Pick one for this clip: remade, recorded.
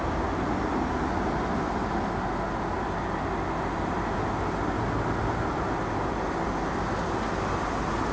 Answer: recorded